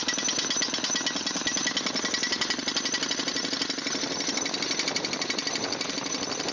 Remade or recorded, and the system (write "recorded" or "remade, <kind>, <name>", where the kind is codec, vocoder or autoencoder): recorded